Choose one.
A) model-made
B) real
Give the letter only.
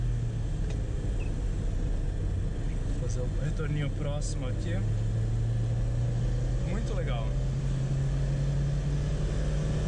B